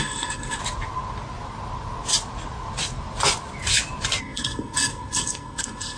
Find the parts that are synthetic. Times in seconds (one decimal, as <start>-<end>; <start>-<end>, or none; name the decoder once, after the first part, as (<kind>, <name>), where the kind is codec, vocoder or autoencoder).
0.0-0.6 (codec, SNAC); 4.2-6.0